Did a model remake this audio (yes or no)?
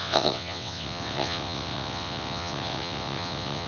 yes